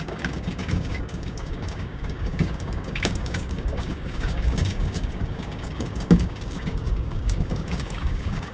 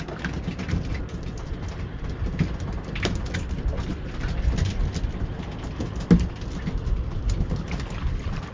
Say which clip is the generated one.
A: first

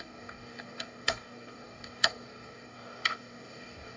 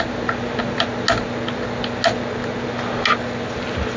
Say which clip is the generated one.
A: first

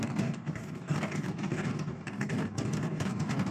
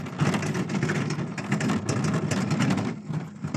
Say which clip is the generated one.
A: first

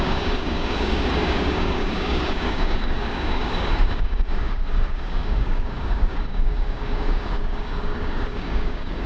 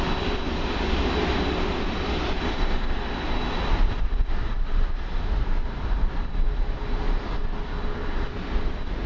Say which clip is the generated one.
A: first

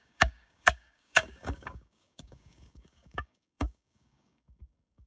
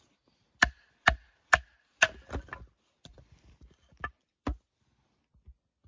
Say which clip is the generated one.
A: first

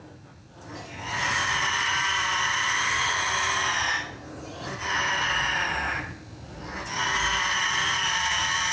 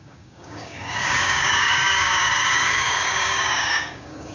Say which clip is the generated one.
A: second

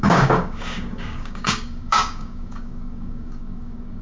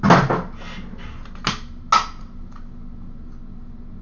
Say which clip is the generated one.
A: first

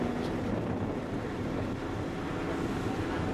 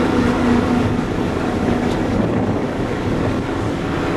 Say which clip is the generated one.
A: second